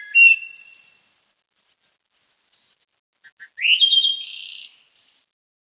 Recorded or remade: recorded